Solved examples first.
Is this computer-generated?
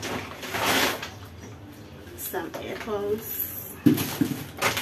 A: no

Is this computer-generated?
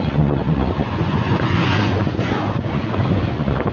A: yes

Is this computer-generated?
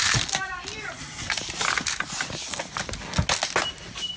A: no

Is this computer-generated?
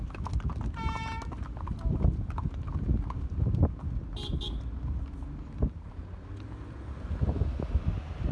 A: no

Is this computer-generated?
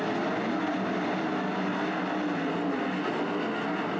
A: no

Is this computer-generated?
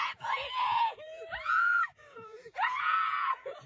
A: yes